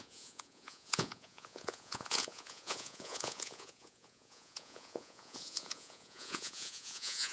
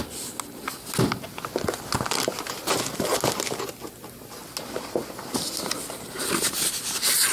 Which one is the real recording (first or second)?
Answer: second